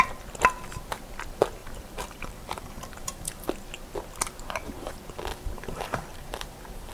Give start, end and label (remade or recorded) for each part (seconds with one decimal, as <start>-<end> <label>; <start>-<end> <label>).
0.0-1.6 recorded; 1.6-3.5 remade; 3.5-5.3 recorded; 5.3-6.9 remade